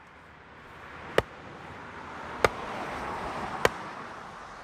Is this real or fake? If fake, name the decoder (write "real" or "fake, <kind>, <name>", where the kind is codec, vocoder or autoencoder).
real